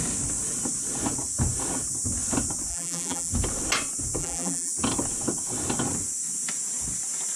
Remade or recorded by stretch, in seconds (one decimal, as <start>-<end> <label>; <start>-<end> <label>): 0.0-2.7 recorded; 2.7-3.3 remade; 3.3-4.2 recorded; 4.2-4.7 remade; 4.7-7.4 recorded

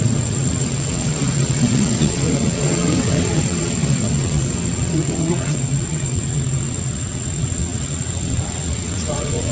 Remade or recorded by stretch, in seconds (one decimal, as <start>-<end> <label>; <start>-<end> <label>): 0.0-9.5 remade

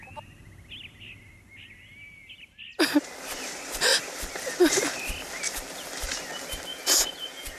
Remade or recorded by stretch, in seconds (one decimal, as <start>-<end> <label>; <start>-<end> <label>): 0.0-6.7 recorded; 6.7-7.6 remade